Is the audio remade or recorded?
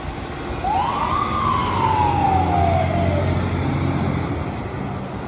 recorded